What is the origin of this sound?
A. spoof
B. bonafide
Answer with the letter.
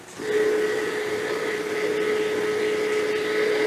B